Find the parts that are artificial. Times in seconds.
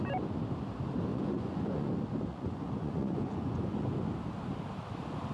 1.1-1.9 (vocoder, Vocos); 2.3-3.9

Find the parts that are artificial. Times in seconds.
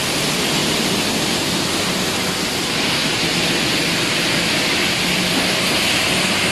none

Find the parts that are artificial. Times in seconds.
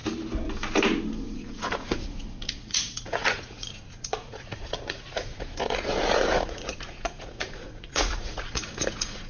1.0-9.3 (vocoder, Vocos)